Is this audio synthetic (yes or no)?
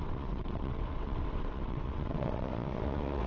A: yes